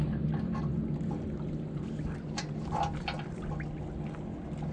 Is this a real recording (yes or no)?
yes